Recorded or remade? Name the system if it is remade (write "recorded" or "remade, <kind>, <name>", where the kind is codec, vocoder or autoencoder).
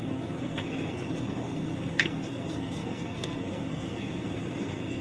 remade, codec, SNAC